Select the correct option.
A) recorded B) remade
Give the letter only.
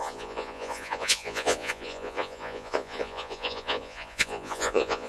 B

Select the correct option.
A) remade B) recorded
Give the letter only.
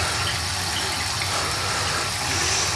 B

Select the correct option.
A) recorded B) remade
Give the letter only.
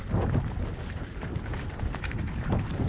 A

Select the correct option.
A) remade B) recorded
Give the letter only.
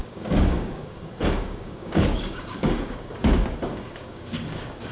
A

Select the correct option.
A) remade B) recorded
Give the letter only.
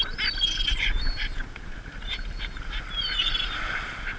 B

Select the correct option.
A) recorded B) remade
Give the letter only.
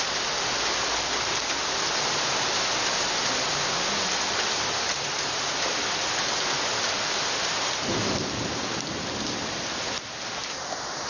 A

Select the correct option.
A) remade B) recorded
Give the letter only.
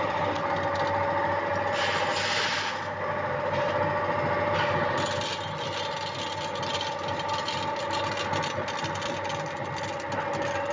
B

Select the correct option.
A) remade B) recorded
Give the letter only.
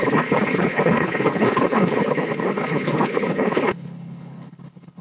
A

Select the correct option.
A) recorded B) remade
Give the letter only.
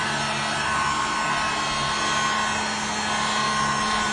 A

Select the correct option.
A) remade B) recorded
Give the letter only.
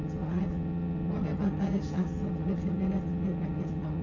A